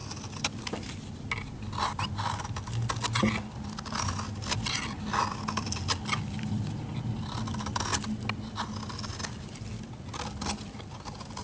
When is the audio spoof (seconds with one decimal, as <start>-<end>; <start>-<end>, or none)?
none